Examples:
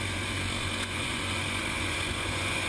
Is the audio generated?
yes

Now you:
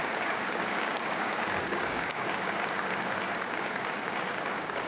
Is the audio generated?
yes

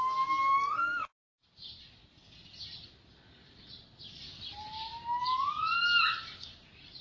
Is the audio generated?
no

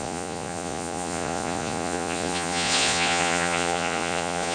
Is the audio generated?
yes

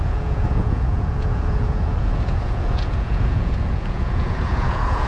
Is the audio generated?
yes